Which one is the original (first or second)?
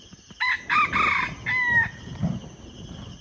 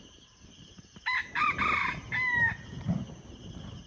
first